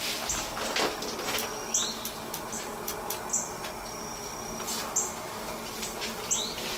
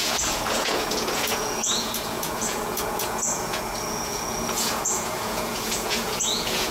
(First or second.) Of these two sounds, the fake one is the second